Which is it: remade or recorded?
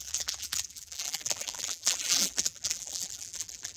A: remade